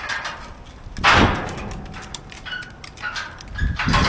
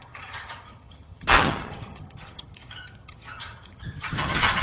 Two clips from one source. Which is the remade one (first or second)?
second